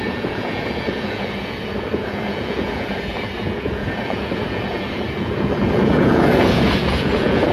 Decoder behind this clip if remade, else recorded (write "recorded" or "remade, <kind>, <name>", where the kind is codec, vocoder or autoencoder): remade, vocoder, Vocos